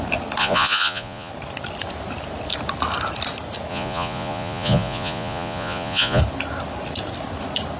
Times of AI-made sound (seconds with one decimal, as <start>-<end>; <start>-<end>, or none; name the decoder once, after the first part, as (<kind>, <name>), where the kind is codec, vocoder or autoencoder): 0.4-1.3 (vocoder, Vocos); 3.7-6.2